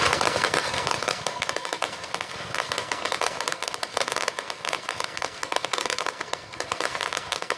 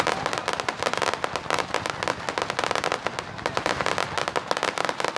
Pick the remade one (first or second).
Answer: first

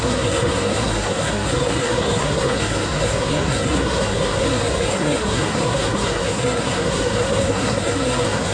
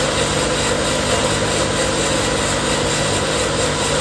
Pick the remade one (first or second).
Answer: first